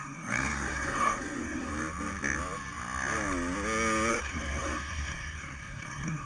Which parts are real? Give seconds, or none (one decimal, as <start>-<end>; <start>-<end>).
1.7-4.1